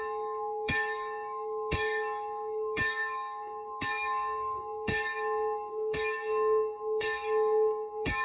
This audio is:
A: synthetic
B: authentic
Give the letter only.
A